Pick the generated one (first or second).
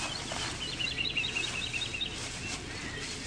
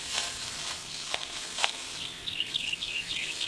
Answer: second